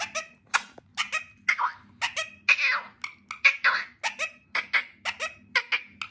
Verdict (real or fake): real